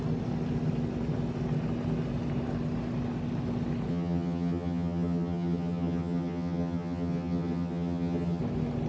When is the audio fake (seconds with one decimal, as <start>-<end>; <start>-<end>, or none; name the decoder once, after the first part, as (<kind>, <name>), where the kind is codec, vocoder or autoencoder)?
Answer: 3.9-8.4 (vocoder, HiFi-GAN)